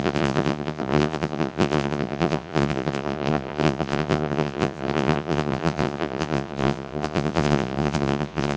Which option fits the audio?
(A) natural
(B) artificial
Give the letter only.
B